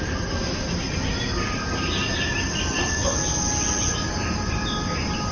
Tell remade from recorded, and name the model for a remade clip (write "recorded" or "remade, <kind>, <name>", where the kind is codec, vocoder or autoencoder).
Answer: recorded